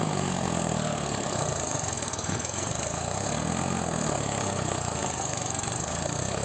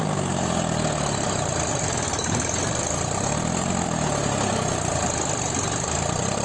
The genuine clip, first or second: second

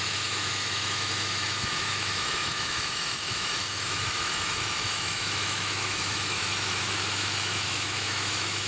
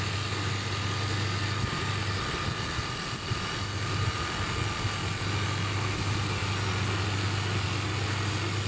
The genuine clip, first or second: second